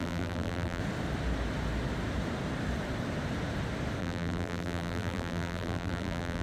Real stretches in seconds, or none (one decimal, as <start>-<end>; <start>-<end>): 0.8-4.0